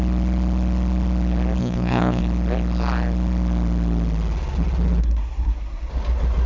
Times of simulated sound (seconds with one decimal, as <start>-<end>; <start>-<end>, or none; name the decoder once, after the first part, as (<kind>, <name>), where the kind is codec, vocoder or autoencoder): 1.6-2.2 (codec, SNAC); 5.0-5.9